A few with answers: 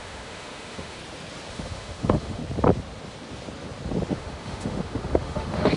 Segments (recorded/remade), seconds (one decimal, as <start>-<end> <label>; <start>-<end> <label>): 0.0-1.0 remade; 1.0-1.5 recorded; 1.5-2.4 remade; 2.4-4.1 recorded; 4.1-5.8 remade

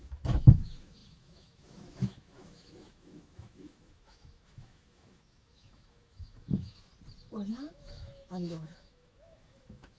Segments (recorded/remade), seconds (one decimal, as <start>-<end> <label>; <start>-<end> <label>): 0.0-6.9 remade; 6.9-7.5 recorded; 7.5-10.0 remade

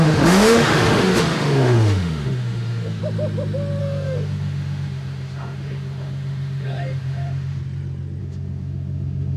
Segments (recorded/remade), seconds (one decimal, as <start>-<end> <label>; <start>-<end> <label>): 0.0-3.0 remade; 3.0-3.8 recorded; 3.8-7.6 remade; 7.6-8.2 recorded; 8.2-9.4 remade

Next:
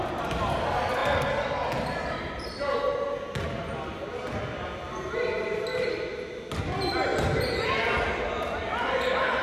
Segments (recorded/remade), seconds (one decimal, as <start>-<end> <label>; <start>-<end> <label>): 0.0-9.4 recorded